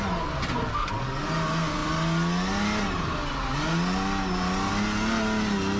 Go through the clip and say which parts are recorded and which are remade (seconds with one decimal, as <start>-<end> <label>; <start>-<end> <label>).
0.0-5.8 recorded